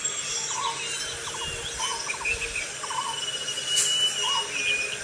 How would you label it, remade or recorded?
recorded